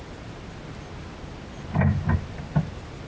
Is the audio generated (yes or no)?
no